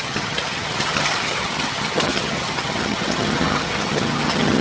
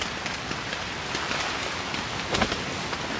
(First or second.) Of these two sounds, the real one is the second